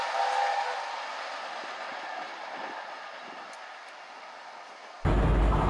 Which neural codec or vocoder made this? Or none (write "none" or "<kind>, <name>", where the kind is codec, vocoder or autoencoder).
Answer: none